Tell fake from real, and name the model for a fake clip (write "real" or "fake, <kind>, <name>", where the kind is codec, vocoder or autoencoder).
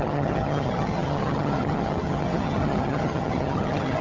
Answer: fake, vocoder, HiFi-GAN